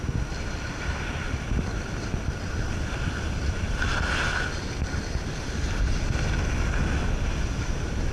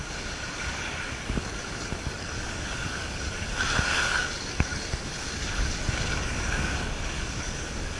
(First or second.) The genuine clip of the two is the first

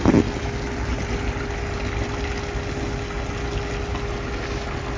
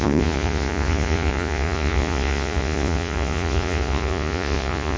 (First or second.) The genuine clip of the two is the first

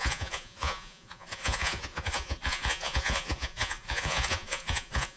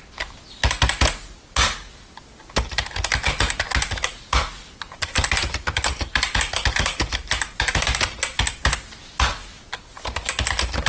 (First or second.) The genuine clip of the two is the second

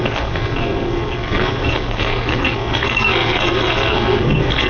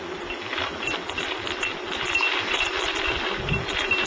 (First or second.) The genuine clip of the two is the second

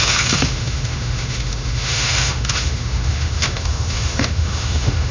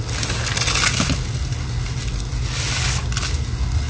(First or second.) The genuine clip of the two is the second